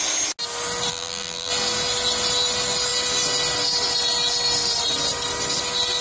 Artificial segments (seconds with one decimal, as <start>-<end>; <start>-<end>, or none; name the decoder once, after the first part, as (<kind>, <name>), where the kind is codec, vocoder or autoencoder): 0.9-1.5 (vocoder, BigVGAN v2)